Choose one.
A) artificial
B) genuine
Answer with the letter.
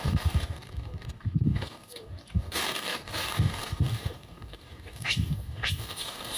A